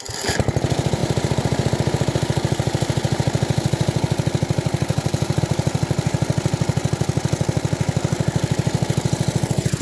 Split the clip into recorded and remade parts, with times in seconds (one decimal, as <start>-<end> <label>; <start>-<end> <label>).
0.0-9.8 recorded